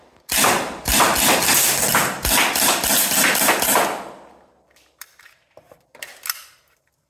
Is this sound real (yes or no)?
yes